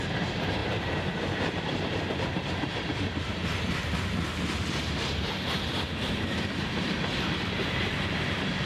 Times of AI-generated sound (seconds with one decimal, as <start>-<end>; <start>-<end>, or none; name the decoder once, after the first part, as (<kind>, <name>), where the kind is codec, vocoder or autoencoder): 0.0-3.4 (vocoder, BigVGAN v2); 3.9-8.7